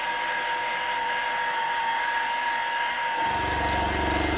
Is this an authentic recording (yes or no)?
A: yes